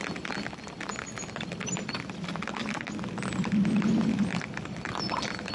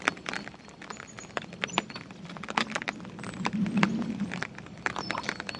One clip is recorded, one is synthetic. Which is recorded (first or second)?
first